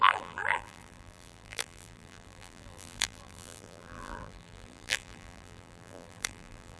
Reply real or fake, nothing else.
fake